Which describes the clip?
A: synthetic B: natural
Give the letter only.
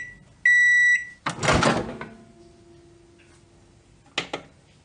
B